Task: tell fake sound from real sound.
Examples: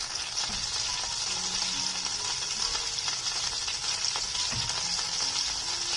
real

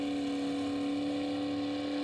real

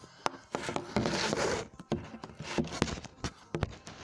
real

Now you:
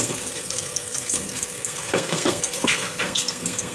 fake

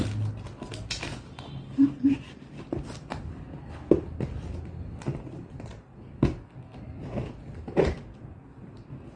real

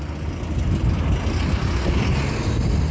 real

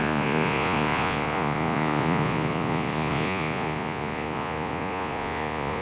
fake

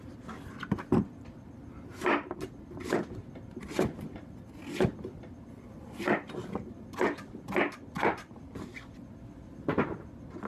real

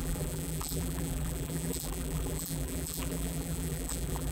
fake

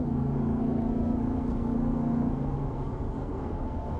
fake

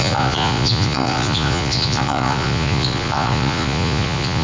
fake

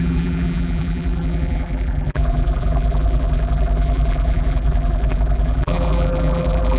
fake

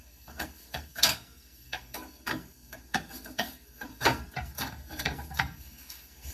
fake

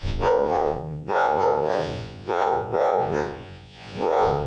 fake